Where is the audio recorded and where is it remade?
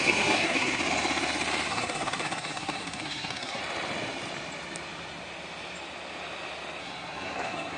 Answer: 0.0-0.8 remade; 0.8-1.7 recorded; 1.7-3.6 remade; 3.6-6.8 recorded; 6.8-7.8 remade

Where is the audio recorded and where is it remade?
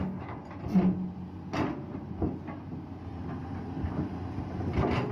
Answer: 0.0-5.1 recorded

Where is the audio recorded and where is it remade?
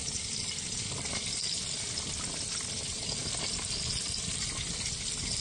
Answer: 0.0-5.4 recorded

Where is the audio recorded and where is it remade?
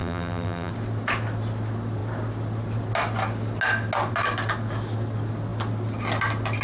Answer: 0.0-0.7 remade; 0.7-6.6 recorded